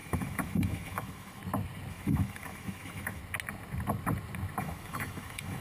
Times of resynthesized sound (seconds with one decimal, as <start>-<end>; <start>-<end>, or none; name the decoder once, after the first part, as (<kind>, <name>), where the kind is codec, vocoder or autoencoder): 0.0-1.4 (autoencoder, DAC-VAE); 1.9-3.2; 4.6-5.6